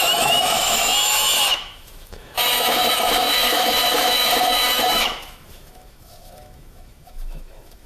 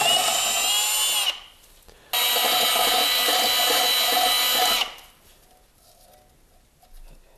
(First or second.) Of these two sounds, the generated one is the first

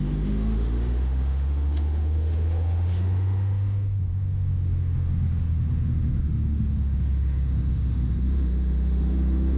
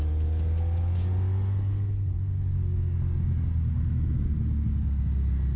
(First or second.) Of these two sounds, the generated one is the first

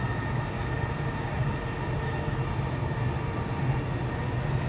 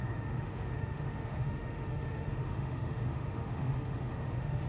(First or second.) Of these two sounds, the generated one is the second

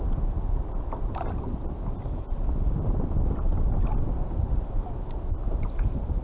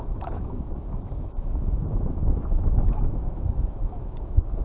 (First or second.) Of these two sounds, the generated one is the second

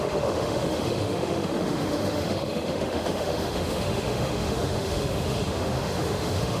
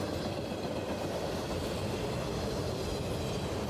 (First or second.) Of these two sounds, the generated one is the first